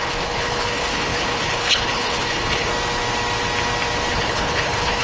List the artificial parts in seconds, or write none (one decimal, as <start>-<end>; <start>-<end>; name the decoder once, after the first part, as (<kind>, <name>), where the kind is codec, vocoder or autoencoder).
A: 0.0-2.7 (codec, HILCodec); 4.1-5.0